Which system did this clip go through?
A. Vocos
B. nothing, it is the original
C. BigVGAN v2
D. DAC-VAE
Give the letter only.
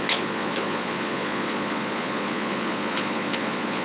A